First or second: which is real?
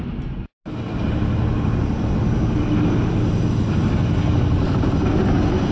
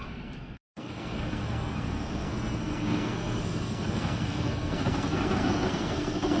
first